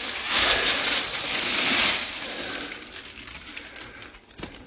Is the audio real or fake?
real